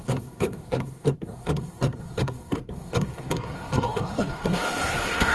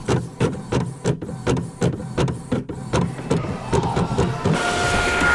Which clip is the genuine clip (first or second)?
second